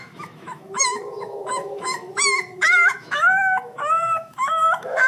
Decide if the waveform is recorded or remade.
remade